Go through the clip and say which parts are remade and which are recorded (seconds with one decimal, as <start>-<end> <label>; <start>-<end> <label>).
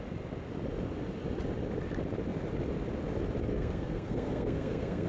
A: 0.0-3.5 recorded; 3.5-5.1 remade